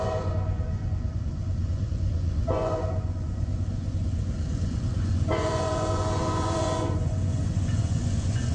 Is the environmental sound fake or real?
fake